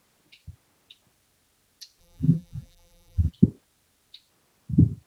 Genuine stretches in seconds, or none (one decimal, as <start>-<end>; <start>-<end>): 0.0-2.0; 3.3-5.1